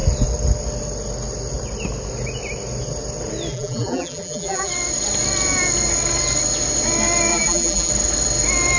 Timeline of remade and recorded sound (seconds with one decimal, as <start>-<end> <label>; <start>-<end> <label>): 0.0-3.5 recorded; 3.5-4.7 remade; 4.7-7.3 recorded; 7.3-7.9 remade; 7.9-8.8 recorded

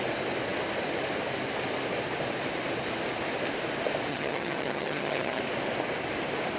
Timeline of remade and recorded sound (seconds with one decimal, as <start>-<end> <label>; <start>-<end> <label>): 0.0-4.1 recorded; 4.1-5.4 remade; 5.4-6.6 recorded

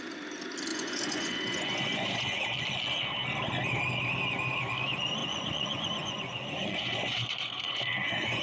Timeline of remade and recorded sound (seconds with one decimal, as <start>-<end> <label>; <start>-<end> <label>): 0.0-0.7 recorded; 0.7-2.4 remade; 2.4-5.2 recorded; 5.2-8.4 remade

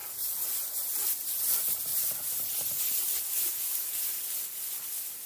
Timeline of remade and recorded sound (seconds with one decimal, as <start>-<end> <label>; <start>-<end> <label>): 0.0-5.3 recorded

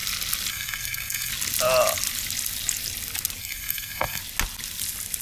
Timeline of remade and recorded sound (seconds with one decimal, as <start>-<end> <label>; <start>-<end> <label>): 0.0-0.5 recorded; 0.5-1.3 remade; 1.3-3.4 recorded; 3.4-4.2 remade; 4.2-5.2 recorded

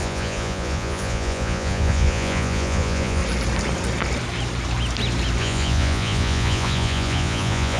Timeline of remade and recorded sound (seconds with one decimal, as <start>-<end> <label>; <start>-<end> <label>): 0.0-3.2 remade; 3.2-5.4 recorded; 5.4-7.8 remade

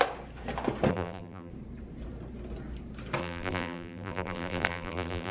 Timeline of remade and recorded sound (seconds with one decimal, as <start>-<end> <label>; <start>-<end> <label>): 0.0-0.9 recorded; 0.9-1.5 remade; 1.5-3.2 recorded; 3.2-5.3 remade